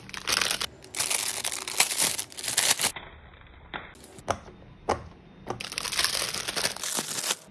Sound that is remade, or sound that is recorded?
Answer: recorded